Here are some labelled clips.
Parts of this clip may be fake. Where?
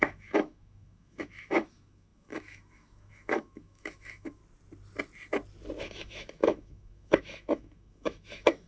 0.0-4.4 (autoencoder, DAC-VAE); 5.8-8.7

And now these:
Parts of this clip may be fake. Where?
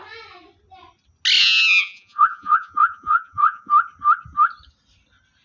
1.4-3.7 (vocoder, Vocos)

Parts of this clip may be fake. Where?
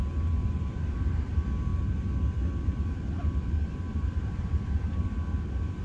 0.4-0.9 (vocoder, BigVGAN v2); 1.7-5.2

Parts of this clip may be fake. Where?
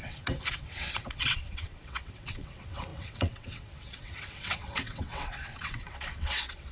0.0-6.7 (vocoder, WaveNeXt)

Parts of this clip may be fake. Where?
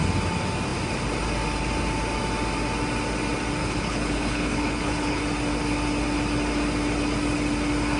3.6-5.2 (codec, HILCodec)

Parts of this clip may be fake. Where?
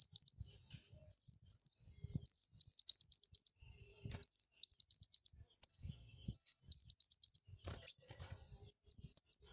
5.7-6.6 (codec, SNAC)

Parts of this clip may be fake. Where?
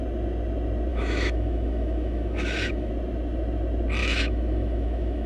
0.9-2.9 (autoencoder, DAC-VAE); 4.0-5.3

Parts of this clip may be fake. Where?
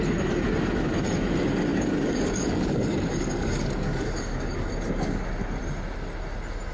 1.7-4.7 (codec, DAC)